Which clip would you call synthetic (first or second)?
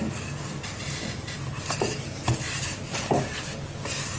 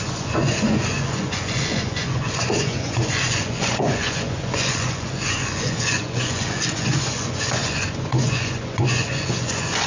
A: second